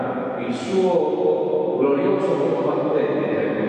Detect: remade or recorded recorded